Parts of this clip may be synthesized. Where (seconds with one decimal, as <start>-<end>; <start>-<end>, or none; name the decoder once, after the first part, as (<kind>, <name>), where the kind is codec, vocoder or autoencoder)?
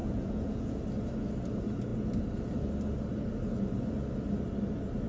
0.0-0.8 (vocoder, Vocos)